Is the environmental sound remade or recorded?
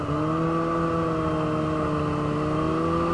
recorded